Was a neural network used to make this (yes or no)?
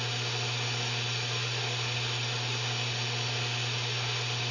no